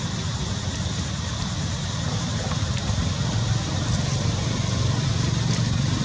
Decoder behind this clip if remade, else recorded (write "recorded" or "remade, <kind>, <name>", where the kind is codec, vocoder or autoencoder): recorded